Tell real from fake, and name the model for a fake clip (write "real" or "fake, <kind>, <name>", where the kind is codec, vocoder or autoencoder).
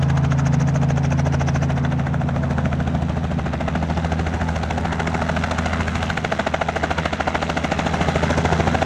real